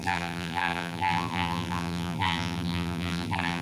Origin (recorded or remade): remade